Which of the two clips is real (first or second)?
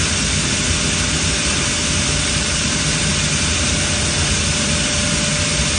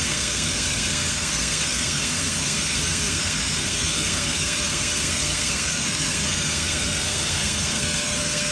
first